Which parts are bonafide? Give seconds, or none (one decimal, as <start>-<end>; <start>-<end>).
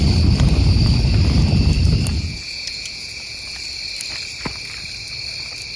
0.0-2.1; 3.6-5.8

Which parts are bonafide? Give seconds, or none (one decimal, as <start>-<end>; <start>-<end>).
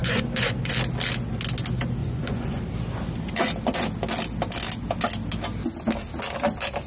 0.7-2.0; 2.6-6.9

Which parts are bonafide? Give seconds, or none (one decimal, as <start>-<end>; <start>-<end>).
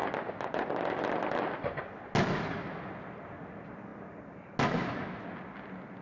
0.0-6.0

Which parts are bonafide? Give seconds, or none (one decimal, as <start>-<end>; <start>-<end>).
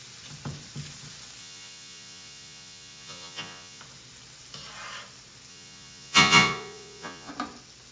0.0-1.4; 3.8-5.5; 7.3-7.9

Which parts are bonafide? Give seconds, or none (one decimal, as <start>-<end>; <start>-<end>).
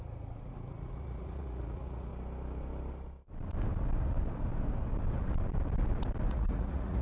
2.1-6.3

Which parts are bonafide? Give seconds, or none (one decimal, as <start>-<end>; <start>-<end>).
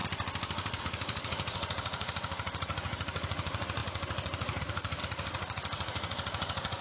0.0-0.8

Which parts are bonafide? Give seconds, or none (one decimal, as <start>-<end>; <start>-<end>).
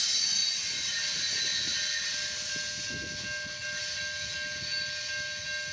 0.0-5.7